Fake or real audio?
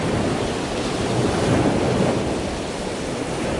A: real